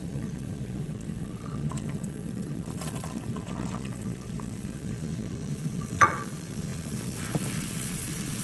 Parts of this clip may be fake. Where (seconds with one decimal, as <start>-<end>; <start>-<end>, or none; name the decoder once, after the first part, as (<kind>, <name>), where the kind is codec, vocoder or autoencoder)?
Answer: 0.0-8.4 (vocoder, Vocos)